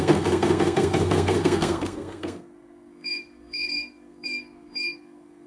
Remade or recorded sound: remade